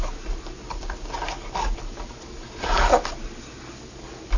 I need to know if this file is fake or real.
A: real